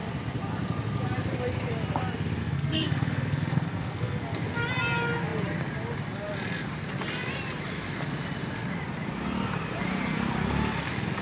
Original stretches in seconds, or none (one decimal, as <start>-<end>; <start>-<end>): 0.0-2.4; 4.4-11.2